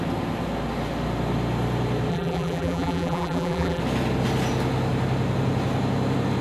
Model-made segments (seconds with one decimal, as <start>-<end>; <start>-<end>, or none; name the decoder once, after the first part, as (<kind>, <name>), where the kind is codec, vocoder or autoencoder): 2.1-3.8 (vocoder, BigVGAN v2)